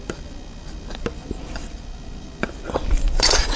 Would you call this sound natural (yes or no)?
no